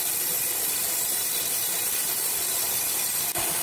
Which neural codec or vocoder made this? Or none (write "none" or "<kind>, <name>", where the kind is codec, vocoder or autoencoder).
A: none